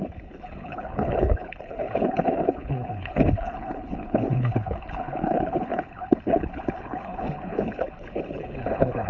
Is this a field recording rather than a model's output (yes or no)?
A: no